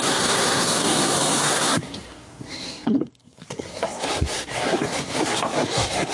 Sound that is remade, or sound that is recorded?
remade